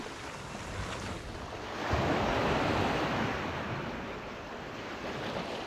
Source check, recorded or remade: recorded